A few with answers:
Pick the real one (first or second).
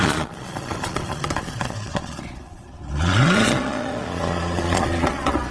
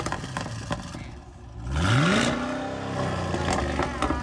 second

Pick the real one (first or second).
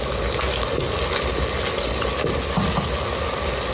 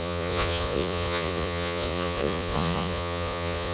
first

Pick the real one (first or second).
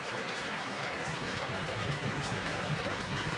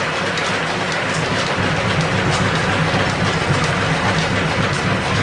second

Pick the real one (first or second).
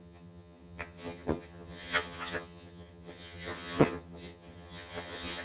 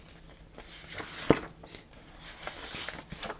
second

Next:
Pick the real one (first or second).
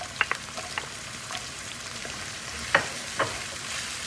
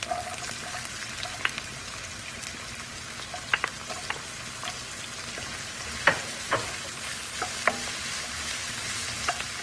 second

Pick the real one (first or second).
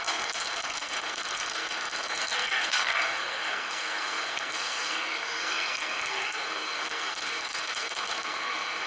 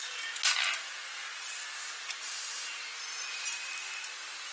second